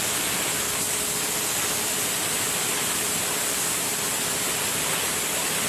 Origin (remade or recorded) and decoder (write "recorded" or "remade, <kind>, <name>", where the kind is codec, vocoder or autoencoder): recorded